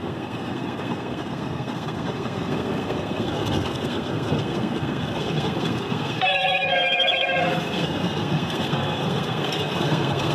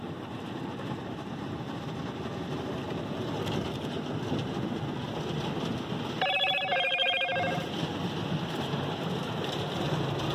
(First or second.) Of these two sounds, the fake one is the first